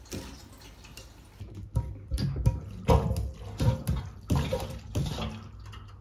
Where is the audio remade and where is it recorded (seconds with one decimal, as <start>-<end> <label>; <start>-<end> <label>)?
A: 0.0-6.0 recorded